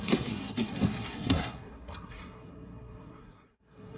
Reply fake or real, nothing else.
fake